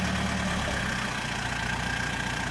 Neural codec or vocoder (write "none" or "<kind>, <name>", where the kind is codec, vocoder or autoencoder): none